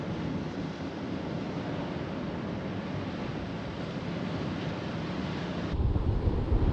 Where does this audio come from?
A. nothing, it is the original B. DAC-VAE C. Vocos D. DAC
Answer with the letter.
A